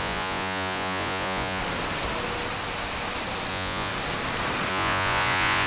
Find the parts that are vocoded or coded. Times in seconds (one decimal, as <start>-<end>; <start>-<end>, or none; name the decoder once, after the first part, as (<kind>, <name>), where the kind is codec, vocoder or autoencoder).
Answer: 0.0-1.6 (vocoder, Vocos); 3.5-3.9; 4.7-5.7